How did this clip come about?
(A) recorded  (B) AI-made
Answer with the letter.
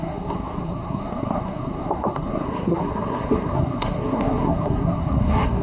B